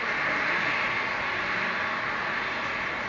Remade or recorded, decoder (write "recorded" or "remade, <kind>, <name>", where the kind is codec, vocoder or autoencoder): recorded